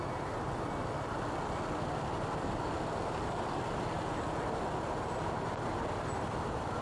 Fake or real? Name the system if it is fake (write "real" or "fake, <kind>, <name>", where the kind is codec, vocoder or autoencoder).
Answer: real